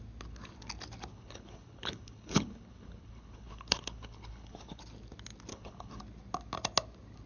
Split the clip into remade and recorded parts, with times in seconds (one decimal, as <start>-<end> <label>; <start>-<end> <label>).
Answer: 0.0-1.1 recorded; 1.1-4.8 remade; 4.8-5.5 recorded; 5.5-6.0 remade; 6.0-7.3 recorded